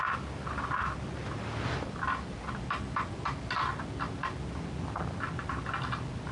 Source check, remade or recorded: recorded